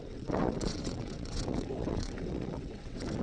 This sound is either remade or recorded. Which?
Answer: remade